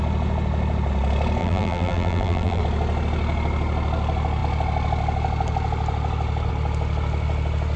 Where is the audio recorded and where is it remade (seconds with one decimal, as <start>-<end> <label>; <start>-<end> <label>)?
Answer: 0.0-1.4 recorded; 1.4-2.6 remade; 2.6-7.8 recorded